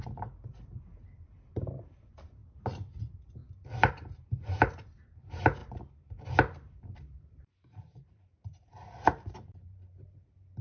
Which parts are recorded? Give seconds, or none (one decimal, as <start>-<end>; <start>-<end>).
2.4-3.0; 3.4-3.9; 5.6-6.8